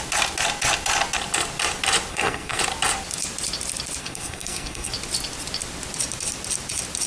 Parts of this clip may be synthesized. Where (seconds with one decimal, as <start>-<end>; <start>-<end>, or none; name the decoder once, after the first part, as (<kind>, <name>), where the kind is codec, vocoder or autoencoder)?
2.1-2.6 (codec, SNAC); 4.0-4.9